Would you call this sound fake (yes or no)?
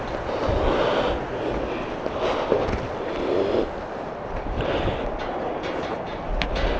no